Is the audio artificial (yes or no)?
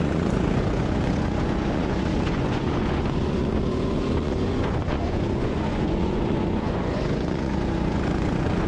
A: yes